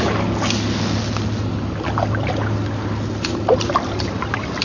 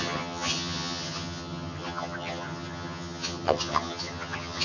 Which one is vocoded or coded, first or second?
second